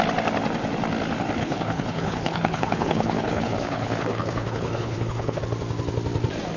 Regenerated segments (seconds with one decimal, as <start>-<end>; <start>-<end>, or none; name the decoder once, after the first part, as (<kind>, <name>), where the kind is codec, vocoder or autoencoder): 1.4-5.4 (codec, HILCodec)